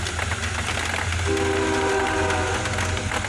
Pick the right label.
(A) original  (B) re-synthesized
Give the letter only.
A